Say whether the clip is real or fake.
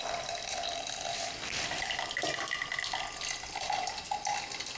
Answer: real